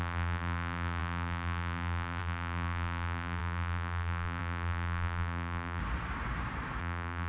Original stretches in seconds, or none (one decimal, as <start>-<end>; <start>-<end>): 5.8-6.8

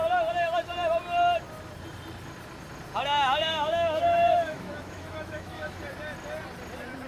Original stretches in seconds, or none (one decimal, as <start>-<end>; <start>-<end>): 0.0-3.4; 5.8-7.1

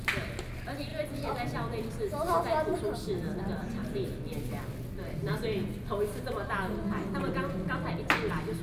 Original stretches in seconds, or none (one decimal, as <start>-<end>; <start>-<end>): 0.0-8.6

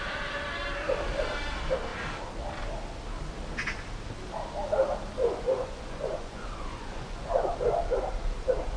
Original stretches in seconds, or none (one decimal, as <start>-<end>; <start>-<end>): 0.0-5.2; 7.3-8.8

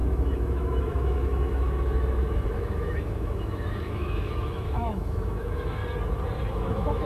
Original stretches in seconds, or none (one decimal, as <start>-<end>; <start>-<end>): 5.8-6.5